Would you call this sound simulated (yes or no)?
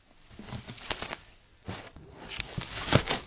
yes